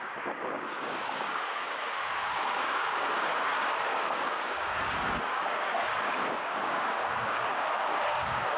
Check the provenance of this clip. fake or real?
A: fake